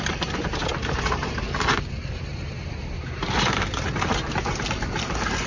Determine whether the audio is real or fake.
fake